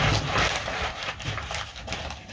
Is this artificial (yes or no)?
no